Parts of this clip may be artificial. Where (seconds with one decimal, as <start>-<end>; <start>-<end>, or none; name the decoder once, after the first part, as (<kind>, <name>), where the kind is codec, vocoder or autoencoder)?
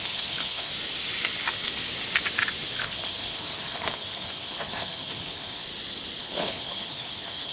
0.0-0.7 (codec, HILCodec); 2.8-5.6; 6.2-7.5